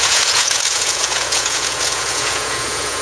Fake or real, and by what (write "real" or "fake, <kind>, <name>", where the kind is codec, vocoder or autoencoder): fake, vocoder, Vocos